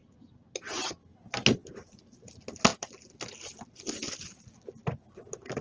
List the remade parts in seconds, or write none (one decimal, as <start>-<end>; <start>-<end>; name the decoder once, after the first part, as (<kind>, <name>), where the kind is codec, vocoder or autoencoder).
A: none